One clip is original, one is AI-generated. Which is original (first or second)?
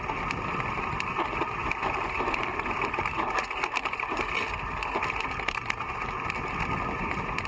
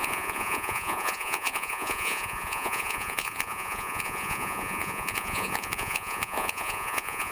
first